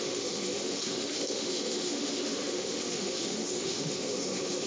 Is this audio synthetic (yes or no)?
yes